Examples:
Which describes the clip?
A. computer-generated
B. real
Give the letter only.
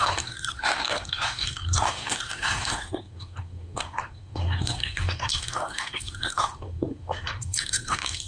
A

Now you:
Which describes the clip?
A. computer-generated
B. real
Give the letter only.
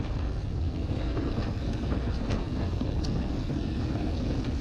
A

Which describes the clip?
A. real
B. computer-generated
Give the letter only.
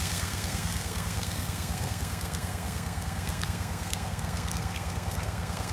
B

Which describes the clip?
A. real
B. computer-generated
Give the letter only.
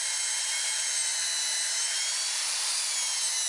A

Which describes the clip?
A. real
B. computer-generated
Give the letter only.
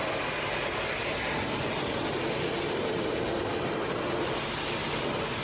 A